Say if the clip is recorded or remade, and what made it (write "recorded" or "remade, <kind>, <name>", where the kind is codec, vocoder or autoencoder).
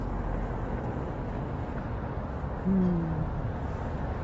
recorded